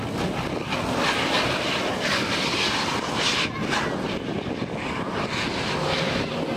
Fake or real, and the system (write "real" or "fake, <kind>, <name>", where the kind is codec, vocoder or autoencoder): real